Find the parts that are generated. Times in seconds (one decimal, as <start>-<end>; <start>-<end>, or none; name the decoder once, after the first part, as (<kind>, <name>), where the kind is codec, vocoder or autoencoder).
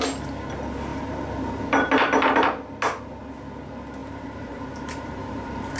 0.9-1.9 (vocoder, BigVGAN v2); 4.0-5.8